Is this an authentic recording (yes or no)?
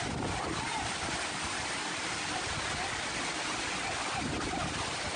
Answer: yes